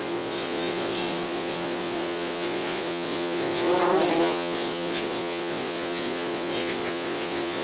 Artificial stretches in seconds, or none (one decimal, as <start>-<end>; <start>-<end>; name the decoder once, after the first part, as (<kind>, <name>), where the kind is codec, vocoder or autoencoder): 0.0-3.7 (vocoder, Vocos); 4.2-7.6